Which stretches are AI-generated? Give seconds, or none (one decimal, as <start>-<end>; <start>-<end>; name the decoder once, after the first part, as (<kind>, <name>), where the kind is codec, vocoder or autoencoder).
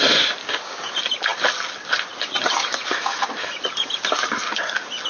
0.4-0.9 (codec, DAC)